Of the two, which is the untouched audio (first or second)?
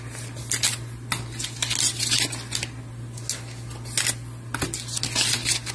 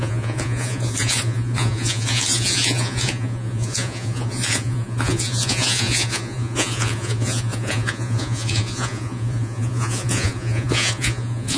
first